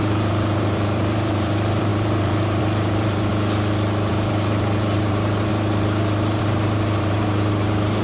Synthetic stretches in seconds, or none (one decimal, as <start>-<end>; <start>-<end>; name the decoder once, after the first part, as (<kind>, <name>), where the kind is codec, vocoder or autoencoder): 0.0-3.3 (vocoder, BigVGAN v2); 4.1-5.5; 6.4-8.0